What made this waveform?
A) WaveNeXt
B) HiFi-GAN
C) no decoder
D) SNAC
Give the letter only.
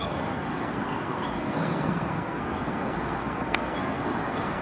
D